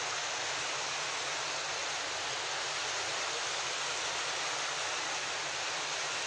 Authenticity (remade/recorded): recorded